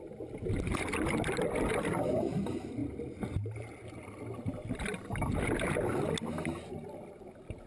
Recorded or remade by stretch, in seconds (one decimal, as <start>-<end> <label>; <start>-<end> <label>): 0.0-7.7 recorded